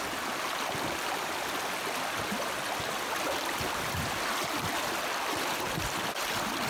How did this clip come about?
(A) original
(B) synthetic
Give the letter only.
A